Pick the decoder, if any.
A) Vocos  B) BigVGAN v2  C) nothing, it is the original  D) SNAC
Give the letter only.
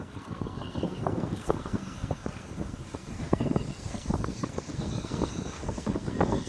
D